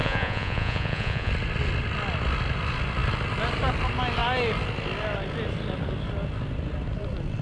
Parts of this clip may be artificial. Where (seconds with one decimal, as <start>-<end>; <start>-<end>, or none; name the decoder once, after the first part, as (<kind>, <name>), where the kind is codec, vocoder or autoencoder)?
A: 0.0-1.3 (vocoder, Vocos)